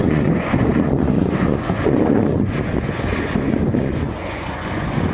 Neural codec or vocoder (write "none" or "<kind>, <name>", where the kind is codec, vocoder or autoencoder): vocoder, Vocos